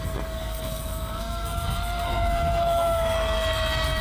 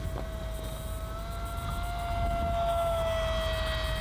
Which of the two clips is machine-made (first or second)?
first